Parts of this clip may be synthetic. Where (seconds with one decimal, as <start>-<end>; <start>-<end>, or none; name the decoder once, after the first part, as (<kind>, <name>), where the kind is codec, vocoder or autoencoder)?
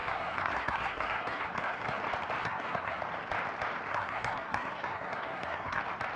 0.0-2.0 (codec, SNAC); 2.4-3.0; 3.9-5.8